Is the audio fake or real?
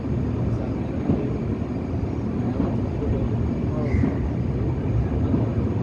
real